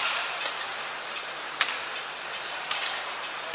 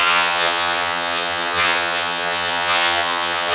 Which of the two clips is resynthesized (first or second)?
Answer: second